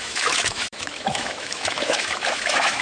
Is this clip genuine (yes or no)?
no